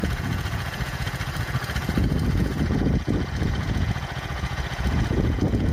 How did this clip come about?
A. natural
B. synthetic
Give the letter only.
B